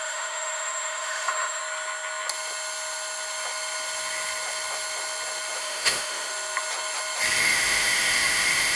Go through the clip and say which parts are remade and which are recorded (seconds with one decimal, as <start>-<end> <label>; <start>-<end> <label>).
0.0-1.6 remade; 1.6-5.6 recorded; 5.6-6.3 remade; 6.3-7.4 recorded; 7.4-8.8 remade